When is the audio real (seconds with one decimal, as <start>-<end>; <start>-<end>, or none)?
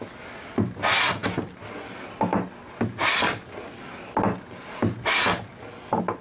0.0-6.2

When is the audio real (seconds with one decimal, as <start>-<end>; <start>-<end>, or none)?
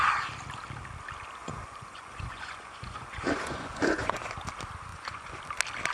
0.0-1.4; 4.3-4.9; 5.4-5.9